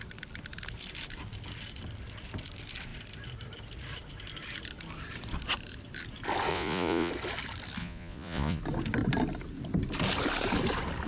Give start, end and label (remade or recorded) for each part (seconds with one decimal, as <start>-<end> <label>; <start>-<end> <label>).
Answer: 0.0-6.5 recorded; 6.5-7.1 remade; 7.1-7.8 recorded; 7.8-8.6 remade; 8.6-11.1 recorded